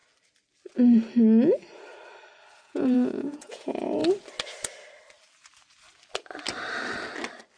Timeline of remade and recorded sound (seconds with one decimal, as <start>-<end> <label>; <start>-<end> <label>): 0.0-2.6 recorded; 2.6-4.0 remade; 4.0-7.6 recorded